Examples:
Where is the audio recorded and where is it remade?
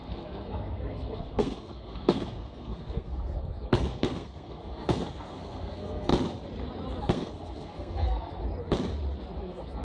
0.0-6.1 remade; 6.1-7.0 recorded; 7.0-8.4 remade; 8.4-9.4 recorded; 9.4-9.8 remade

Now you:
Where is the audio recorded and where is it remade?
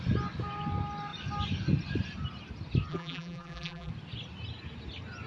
0.0-2.9 recorded; 2.9-3.9 remade; 3.9-5.3 recorded